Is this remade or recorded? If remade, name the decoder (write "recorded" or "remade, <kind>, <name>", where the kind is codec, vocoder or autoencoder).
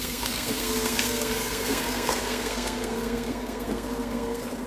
remade, codec, SNAC